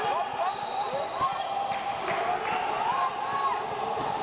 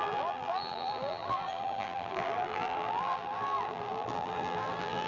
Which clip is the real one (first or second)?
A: first